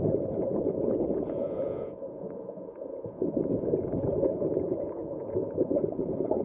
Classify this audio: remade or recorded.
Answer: remade